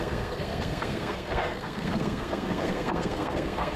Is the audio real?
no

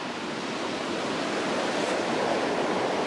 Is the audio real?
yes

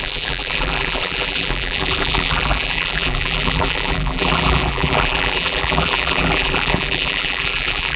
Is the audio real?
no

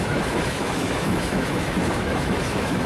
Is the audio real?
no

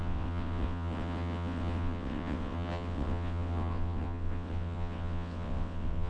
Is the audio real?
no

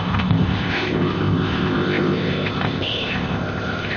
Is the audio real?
no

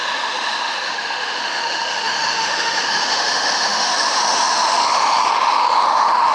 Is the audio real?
no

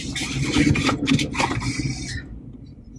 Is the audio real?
no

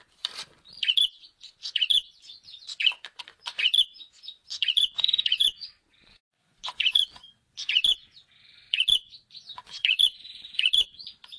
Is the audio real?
no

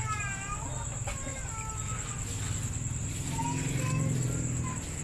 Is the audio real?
yes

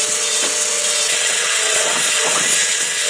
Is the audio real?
no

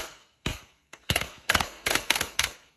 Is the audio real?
no